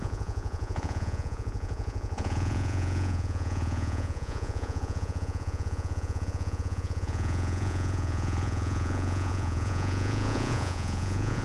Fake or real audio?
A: fake